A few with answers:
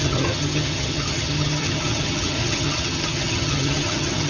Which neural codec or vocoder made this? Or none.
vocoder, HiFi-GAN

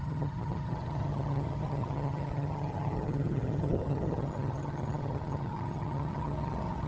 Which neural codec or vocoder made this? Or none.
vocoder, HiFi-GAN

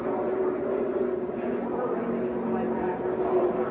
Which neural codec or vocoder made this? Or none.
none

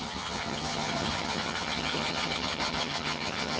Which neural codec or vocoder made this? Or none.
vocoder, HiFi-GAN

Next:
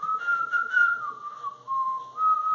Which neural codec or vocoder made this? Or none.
none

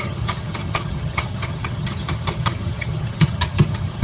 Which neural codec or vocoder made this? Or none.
vocoder, HiFi-GAN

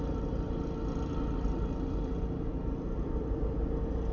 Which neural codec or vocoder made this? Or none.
none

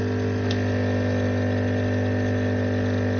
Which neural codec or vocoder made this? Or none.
none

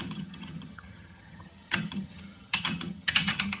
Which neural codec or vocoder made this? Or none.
vocoder, HiFi-GAN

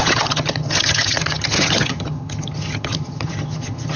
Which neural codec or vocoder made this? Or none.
vocoder, HiFi-GAN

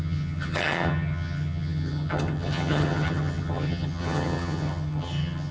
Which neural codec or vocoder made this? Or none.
vocoder, HiFi-GAN